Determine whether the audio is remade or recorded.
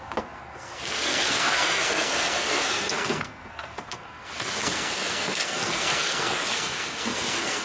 remade